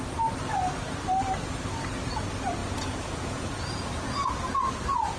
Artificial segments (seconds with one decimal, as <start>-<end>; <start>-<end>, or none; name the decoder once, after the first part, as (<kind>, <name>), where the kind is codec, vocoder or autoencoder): 2.6-4.7 (vocoder, Vocos)